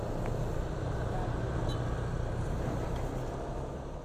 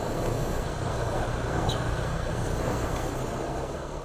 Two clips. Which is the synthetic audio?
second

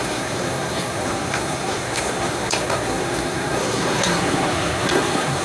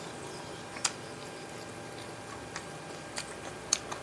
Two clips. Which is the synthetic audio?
first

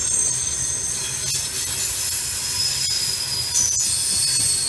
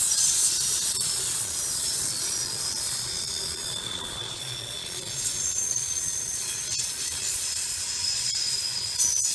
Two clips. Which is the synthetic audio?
second